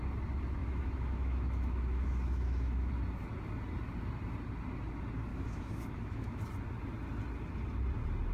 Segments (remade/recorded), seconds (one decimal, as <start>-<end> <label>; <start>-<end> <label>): 0.0-0.6 recorded; 0.6-2.9 remade; 2.9-5.3 recorded; 5.3-6.4 remade; 6.4-8.3 recorded